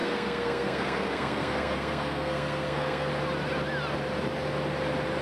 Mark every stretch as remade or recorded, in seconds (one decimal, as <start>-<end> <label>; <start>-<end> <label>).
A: 0.0-3.1 remade; 3.1-5.2 recorded

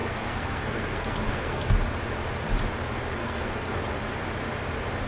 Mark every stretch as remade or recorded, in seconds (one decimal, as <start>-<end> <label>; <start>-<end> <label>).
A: 0.0-1.7 remade; 1.7-3.2 recorded; 3.2-3.9 remade; 3.9-5.1 recorded

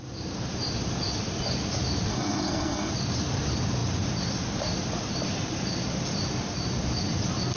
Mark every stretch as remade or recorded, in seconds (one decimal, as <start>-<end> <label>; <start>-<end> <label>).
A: 0.0-2.1 recorded; 2.1-2.9 remade; 2.9-7.6 recorded